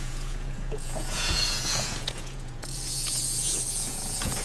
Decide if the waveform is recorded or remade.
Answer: remade